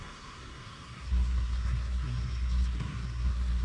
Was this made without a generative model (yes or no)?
no